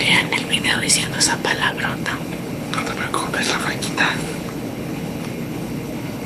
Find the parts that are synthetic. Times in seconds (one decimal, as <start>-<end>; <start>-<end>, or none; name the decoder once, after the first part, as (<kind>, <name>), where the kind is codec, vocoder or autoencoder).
0.0-6.3 (codec, HILCodec)